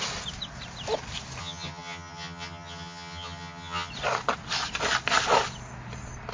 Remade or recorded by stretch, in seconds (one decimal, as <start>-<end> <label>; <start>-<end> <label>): 0.0-1.4 recorded; 1.4-3.9 remade; 3.9-6.3 recorded